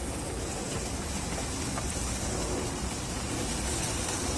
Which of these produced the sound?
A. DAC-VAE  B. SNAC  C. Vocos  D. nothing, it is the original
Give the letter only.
D